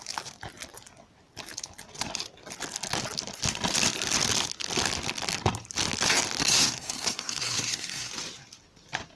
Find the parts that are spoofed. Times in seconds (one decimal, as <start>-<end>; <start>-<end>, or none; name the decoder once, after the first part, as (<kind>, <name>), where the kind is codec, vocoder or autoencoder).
6.4-8.1 (codec, SNAC)